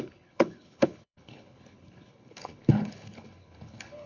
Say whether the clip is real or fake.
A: fake